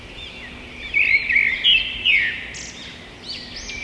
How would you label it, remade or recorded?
recorded